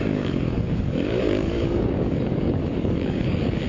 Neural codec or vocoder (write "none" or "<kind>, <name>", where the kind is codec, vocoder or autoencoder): codec, DAC